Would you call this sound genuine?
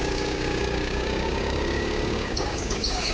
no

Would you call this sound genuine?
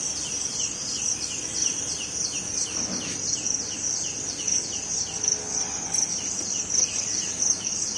yes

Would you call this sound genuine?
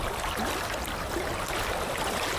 yes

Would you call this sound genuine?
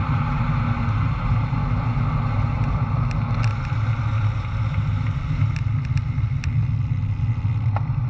yes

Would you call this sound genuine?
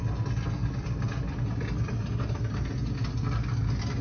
yes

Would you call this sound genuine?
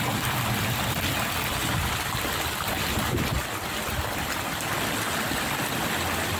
yes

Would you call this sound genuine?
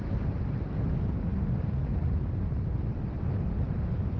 yes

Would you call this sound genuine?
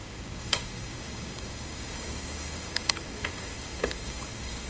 no